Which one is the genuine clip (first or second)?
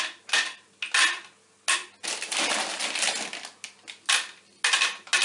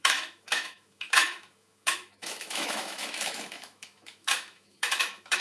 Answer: first